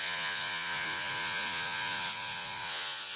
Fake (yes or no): yes